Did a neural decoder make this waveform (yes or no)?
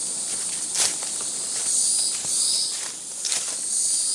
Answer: no